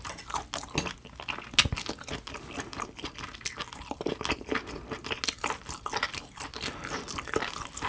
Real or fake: real